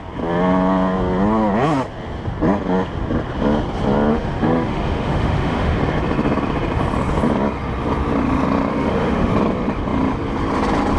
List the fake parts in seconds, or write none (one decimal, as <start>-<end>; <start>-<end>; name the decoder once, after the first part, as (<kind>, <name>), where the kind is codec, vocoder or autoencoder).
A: 4.1-5.8 (autoencoder, DAC-VAE); 8.7-9.3